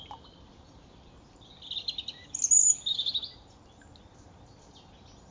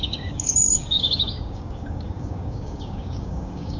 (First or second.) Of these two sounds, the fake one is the second